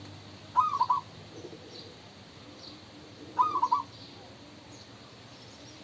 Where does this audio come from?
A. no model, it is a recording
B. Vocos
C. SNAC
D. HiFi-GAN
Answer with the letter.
A